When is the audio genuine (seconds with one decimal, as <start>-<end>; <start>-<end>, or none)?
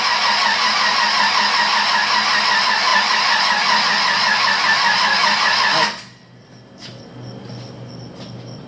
0.0-8.7